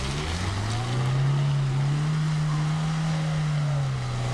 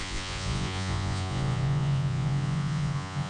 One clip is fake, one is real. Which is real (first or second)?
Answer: first